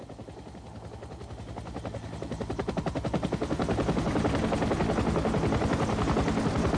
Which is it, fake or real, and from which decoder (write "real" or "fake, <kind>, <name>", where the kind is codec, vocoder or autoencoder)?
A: real